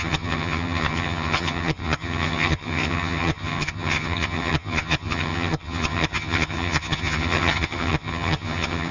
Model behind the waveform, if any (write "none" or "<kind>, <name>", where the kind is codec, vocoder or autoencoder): vocoder, HiFi-GAN